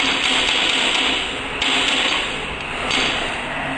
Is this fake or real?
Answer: real